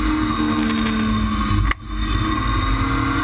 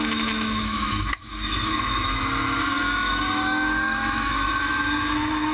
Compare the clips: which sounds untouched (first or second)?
first